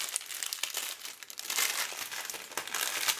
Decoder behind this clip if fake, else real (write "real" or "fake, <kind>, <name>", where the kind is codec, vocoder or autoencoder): real